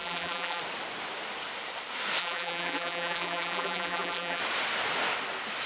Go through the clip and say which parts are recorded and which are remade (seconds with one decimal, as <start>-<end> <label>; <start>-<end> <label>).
0.0-0.6 remade; 0.6-2.2 recorded; 2.2-4.4 remade; 4.4-5.7 recorded